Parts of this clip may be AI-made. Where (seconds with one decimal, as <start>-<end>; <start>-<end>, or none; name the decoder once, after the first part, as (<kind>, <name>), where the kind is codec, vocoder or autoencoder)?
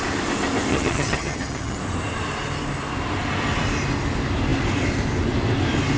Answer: 0.7-1.8 (vocoder, HiFi-GAN)